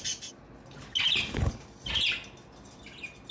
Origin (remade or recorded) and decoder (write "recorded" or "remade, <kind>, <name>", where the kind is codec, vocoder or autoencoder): recorded